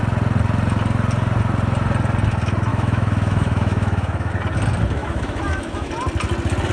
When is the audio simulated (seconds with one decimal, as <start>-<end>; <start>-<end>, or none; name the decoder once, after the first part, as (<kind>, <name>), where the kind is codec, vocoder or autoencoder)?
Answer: 2.7-4.3 (autoencoder, DAC-VAE); 5.0-5.9